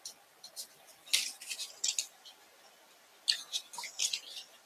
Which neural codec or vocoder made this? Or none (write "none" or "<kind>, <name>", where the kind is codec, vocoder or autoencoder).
none